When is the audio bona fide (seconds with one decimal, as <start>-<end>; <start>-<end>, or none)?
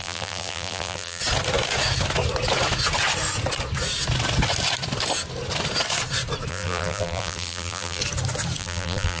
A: 1.2-6.5; 8.0-8.6